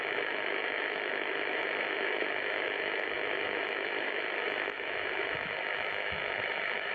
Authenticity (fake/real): fake